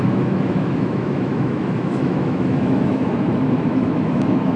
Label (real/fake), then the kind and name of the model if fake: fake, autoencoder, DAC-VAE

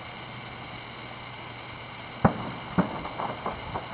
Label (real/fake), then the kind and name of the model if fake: real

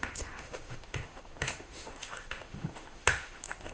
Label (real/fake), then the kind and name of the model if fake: fake, autoencoder, DAC-VAE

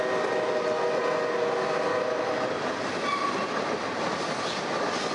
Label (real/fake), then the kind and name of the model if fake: real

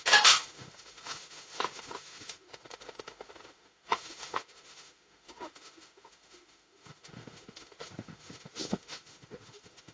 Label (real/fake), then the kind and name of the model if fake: fake, autoencoder, DAC-VAE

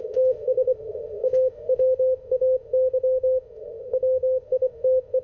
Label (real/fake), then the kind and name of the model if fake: fake, autoencoder, DAC-VAE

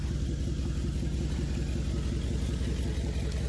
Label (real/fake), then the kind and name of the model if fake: real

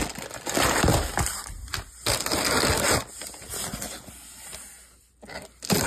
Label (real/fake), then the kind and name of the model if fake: real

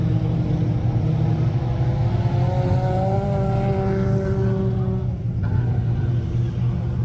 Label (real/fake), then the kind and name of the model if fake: real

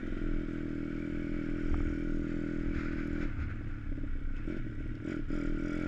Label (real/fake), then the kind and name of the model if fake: real